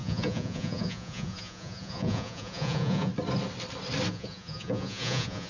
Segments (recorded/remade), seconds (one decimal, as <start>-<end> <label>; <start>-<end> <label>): 0.0-3.1 remade; 3.1-4.1 recorded; 4.1-5.5 remade